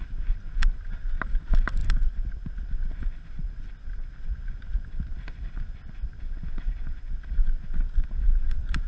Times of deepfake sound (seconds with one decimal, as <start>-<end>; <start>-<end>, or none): 1.8-2.9